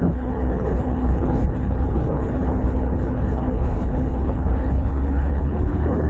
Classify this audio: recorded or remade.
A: remade